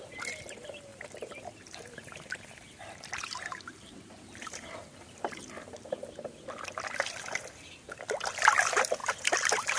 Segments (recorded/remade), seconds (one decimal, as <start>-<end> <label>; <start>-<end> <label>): 0.0-0.9 recorded; 0.9-5.4 remade; 5.4-9.0 recorded; 9.0-9.8 remade